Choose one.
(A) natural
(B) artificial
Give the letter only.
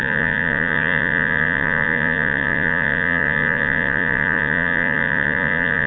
B